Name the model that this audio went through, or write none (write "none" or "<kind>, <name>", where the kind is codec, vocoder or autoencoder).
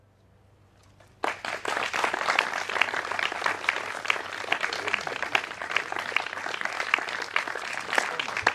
none